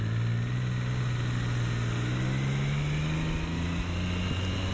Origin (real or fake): real